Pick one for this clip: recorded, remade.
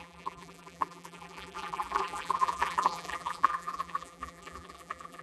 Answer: remade